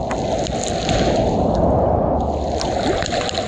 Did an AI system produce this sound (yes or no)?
no